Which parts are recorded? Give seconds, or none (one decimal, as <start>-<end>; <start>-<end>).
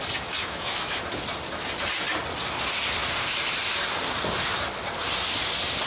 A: 0.0-0.4; 1.0-5.9